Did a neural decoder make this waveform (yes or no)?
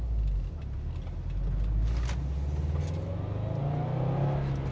no